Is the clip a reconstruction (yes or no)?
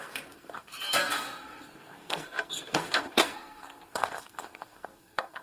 yes